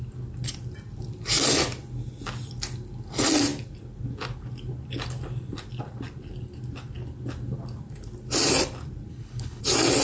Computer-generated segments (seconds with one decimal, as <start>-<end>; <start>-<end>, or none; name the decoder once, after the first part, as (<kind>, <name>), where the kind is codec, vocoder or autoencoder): 9.1-9.6 (codec, HILCodec)